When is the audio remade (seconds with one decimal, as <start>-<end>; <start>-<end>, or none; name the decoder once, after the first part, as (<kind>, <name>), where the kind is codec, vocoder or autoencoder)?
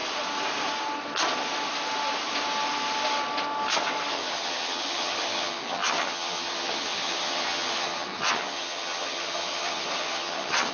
4.1-10.7 (vocoder, HiFi-GAN)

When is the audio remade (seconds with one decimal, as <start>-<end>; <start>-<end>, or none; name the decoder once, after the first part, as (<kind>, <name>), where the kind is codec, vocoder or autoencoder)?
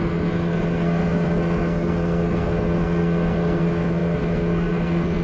0.0-5.2 (codec, SNAC)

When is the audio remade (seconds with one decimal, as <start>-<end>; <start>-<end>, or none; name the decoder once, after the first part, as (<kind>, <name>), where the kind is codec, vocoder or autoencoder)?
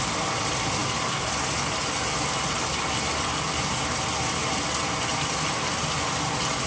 none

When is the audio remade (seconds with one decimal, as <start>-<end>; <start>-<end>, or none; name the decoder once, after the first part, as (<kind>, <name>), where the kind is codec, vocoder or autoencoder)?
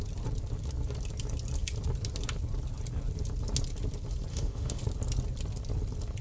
4.3-4.8 (autoencoder, DAC-VAE)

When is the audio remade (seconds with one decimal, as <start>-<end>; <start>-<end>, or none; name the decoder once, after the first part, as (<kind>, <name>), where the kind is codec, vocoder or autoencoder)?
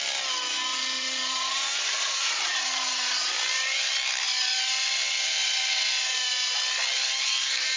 0.7-3.3 (vocoder, Vocos)